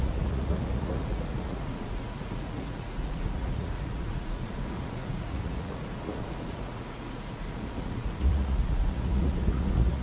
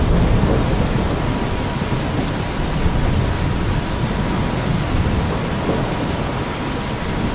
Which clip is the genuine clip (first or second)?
second